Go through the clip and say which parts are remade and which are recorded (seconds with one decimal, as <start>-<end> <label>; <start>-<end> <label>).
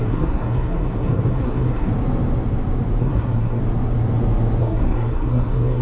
0.0-1.9 remade; 1.9-3.0 recorded; 3.0-3.6 remade; 3.6-4.6 recorded; 4.6-5.8 remade